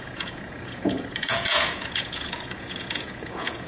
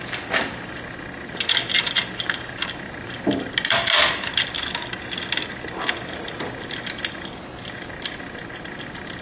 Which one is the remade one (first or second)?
first